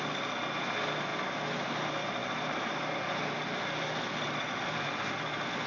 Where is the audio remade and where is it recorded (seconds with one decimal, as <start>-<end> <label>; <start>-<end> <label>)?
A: 0.0-1.1 recorded; 1.1-1.7 remade; 1.7-2.2 recorded; 2.2-5.7 remade